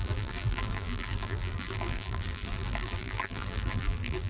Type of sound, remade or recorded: remade